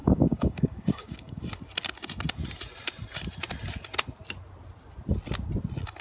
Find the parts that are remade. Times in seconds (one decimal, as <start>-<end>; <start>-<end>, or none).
0.0-1.4